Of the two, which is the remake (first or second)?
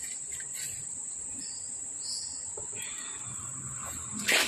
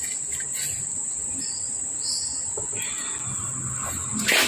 first